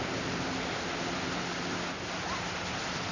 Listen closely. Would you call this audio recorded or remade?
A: recorded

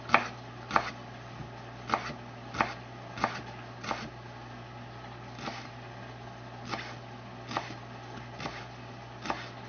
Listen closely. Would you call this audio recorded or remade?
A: recorded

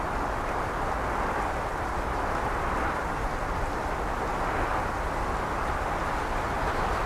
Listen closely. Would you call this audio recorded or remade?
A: recorded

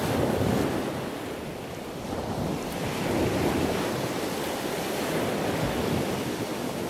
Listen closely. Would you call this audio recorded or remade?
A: recorded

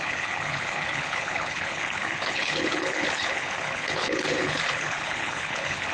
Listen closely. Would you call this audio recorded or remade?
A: remade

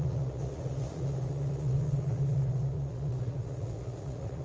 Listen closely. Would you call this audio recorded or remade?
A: remade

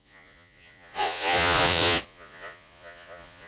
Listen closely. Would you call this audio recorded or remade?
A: remade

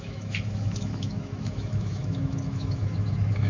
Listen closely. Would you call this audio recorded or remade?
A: remade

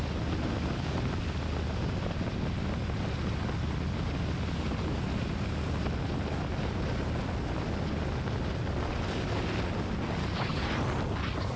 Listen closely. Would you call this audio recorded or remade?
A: recorded